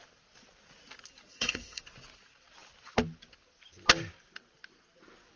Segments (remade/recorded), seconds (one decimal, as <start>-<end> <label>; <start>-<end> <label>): 0.0-1.3 recorded; 1.3-1.8 remade; 1.8-5.4 recorded